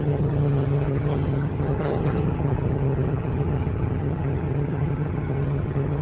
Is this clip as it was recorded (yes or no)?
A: no